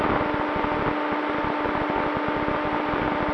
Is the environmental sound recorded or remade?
recorded